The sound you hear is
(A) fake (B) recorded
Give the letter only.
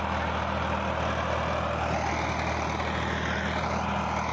B